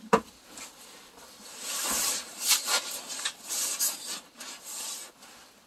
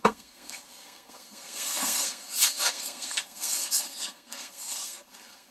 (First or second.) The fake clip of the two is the second